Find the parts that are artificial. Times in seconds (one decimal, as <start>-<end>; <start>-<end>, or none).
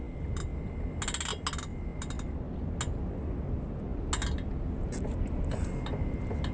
none